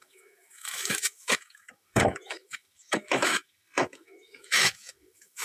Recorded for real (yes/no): no